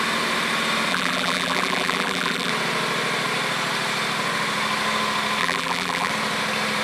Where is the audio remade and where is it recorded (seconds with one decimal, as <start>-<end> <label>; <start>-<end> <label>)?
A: 0.0-0.9 recorded; 0.9-2.5 remade; 2.5-5.4 recorded; 5.4-6.1 remade; 6.1-6.8 recorded